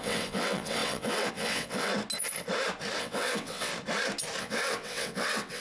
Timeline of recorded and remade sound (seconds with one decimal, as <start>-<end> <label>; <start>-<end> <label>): 0.0-1.9 remade; 1.9-3.0 recorded; 3.0-3.7 remade; 3.7-4.4 recorded; 4.4-5.6 remade